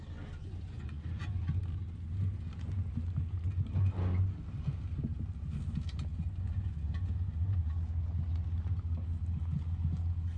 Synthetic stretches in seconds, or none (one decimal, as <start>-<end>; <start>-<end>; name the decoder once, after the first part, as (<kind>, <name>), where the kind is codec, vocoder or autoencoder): 0.4-1.4 (vocoder, Vocos); 6.1-7.7